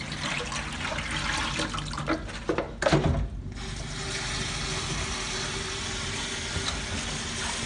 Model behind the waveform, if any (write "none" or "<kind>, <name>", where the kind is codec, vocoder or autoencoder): none